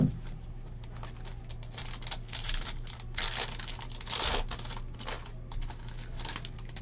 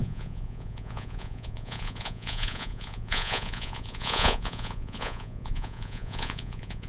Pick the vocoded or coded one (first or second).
second